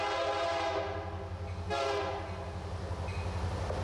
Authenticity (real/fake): real